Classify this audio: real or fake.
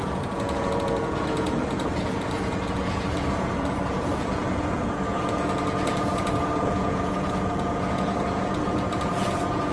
fake